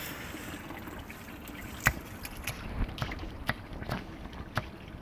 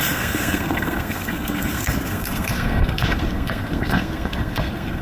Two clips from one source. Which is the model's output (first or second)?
second